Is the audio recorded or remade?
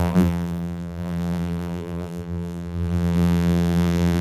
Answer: remade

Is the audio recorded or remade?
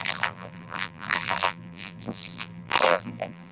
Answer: remade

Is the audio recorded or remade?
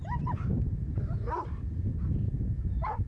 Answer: remade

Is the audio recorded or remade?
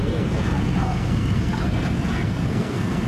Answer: remade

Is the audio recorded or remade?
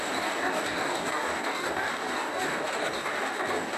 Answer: remade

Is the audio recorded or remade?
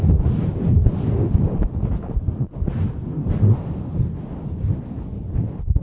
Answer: recorded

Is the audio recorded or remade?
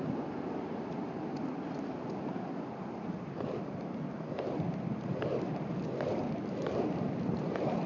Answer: recorded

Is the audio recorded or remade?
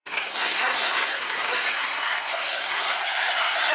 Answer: remade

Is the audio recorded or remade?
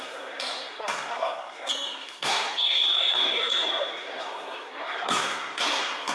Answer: remade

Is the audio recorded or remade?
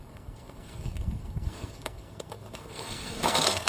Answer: remade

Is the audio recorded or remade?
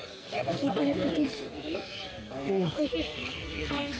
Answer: remade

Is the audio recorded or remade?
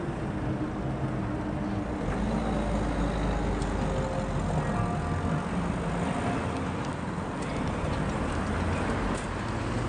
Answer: recorded